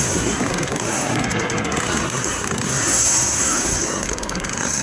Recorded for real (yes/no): no